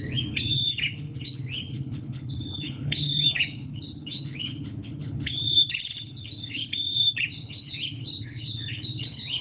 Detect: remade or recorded remade